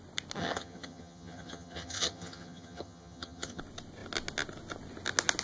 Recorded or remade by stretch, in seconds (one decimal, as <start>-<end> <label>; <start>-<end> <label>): 0.0-0.4 recorded; 0.4-3.6 remade; 3.6-5.4 recorded